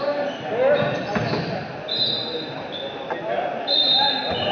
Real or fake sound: real